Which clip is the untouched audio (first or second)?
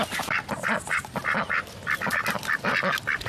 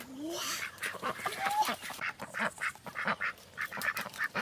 first